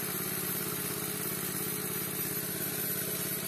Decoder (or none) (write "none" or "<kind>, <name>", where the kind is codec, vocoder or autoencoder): none